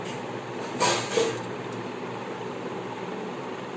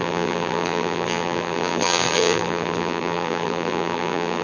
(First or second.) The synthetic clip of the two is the second